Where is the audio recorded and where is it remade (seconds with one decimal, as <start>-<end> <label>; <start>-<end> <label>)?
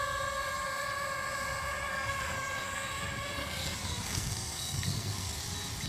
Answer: 0.0-1.9 recorded; 1.9-5.4 remade; 5.4-5.9 recorded